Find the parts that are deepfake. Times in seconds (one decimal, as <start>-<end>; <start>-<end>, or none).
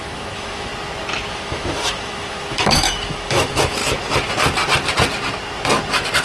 0.0-0.7; 1.3-3.8